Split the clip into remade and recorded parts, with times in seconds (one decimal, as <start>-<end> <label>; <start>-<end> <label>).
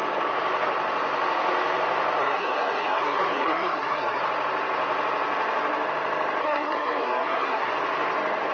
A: 0.0-2.2 recorded; 2.2-4.2 remade; 4.2-6.4 recorded; 6.4-7.7 remade; 7.7-8.5 recorded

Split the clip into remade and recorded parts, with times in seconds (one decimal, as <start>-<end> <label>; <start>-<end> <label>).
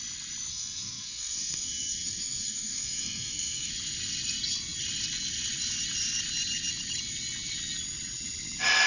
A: 0.0-0.5 recorded; 0.5-3.7 remade; 3.7-8.9 recorded